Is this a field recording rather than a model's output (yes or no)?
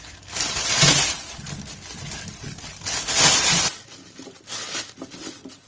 yes